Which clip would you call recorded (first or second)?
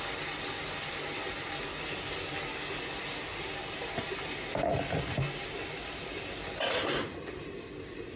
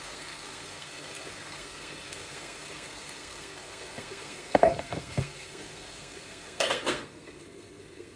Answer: first